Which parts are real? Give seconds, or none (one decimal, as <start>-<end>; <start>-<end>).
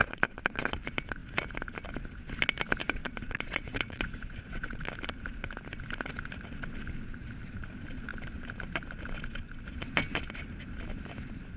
0.6-2.8; 4.9-11.6